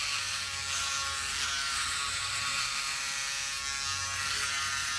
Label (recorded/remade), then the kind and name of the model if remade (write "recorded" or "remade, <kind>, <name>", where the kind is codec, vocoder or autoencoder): recorded